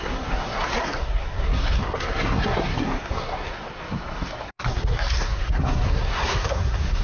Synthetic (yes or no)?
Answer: yes